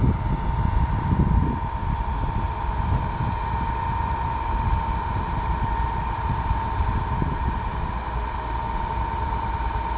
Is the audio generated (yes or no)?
no